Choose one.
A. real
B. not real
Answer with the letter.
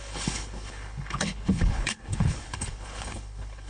B